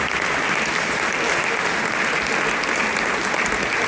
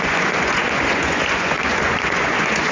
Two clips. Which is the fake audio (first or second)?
second